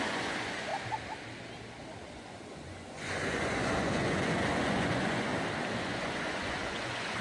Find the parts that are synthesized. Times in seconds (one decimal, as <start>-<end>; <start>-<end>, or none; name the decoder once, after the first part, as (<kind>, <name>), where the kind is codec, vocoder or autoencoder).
0.0-0.7 (vocoder, Vocos); 2.1-5.3; 5.8-7.2